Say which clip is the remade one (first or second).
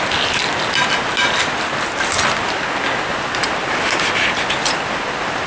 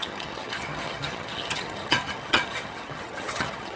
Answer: second